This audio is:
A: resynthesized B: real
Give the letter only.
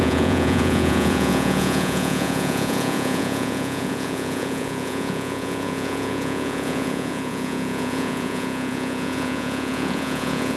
A